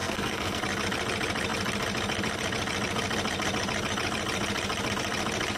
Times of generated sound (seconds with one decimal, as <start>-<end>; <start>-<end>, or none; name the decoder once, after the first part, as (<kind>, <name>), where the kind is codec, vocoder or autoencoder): 0.0-0.6 (codec, SNAC)